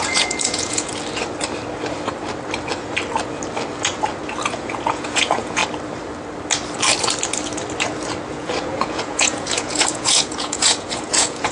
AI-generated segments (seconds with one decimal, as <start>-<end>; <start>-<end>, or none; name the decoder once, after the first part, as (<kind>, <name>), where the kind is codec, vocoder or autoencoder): 0.0-0.9 (vocoder, Vocos); 4.5-5.6; 8.3-11.5